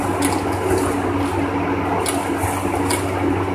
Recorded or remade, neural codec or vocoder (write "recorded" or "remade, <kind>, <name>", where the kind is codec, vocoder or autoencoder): recorded